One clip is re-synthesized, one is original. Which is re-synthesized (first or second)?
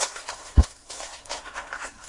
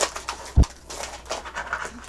first